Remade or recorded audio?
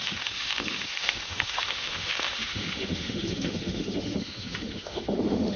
remade